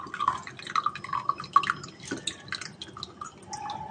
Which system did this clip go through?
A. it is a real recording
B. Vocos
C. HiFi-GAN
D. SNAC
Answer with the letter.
A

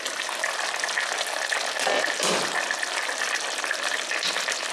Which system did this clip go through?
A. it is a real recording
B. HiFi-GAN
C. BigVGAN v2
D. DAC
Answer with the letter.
A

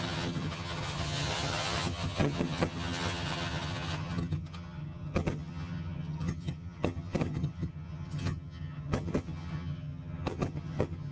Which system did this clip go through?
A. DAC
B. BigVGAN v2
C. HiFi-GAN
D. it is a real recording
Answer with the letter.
C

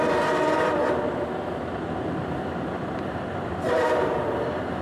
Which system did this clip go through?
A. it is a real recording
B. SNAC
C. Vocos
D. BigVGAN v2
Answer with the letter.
D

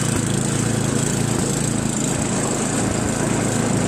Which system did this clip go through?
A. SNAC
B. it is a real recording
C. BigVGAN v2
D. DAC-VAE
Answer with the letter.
B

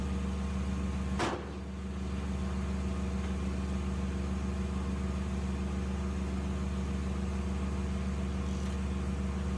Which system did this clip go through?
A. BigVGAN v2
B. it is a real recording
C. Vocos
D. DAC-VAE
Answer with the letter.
B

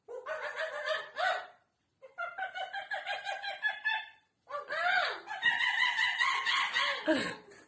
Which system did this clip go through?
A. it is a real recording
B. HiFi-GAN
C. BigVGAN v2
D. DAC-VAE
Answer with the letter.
C